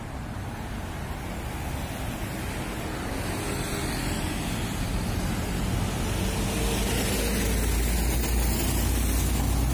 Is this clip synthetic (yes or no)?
no